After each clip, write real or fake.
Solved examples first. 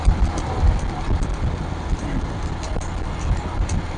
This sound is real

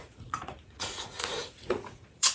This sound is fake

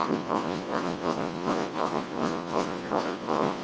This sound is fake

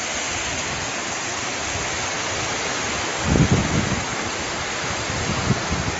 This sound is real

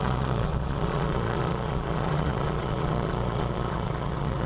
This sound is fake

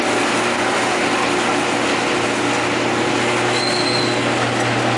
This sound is real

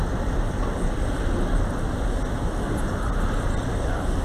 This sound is real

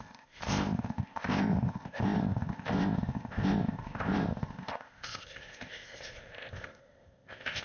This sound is fake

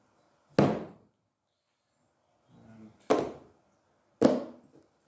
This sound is real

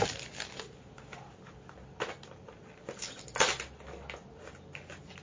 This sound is real